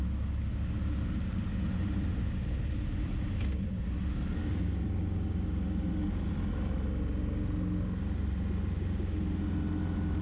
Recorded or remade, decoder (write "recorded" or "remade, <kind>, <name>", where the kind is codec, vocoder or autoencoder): recorded